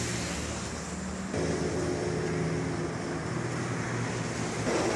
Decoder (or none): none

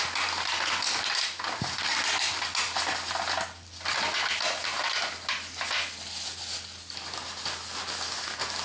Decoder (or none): none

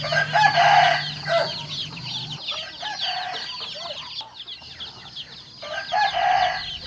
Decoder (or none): none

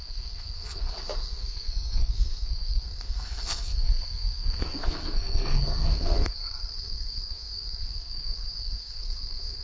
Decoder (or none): codec, SNAC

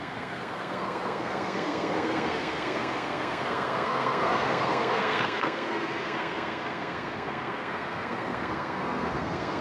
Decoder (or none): codec, SNAC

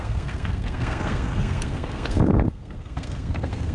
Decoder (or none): codec, SNAC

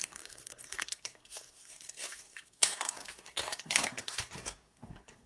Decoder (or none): codec, SNAC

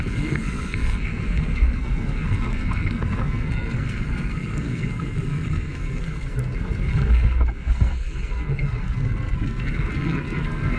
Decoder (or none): codec, SNAC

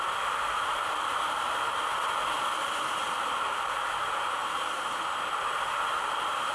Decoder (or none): none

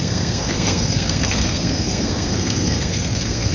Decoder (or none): codec, SNAC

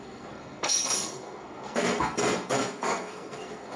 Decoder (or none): codec, SNAC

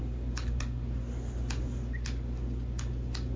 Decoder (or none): none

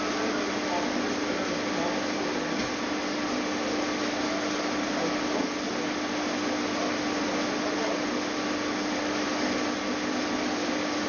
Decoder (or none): none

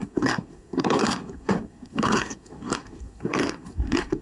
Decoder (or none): codec, SNAC